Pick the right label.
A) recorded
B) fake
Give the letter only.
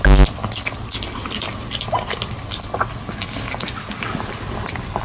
A